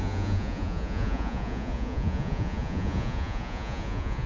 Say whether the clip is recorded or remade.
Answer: remade